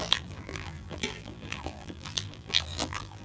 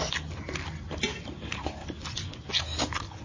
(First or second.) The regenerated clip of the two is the first